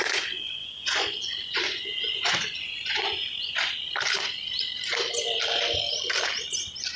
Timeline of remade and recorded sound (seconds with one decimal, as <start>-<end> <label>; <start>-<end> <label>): 0.0-3.7 remade; 3.7-7.0 recorded